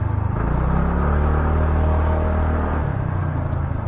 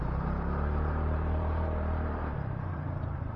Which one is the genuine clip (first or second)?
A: first